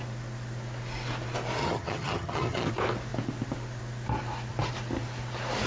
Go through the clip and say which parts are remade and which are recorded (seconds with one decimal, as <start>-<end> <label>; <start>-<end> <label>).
0.0-1.6 recorded; 1.6-2.7 remade; 2.7-5.7 recorded